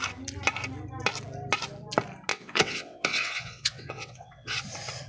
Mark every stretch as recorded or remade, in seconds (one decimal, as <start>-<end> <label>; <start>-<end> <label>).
0.0-2.3 recorded; 2.3-4.6 remade; 4.6-5.1 recorded